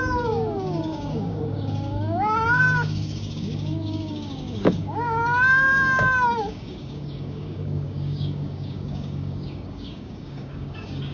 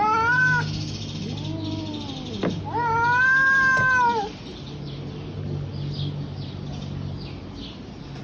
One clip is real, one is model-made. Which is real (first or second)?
second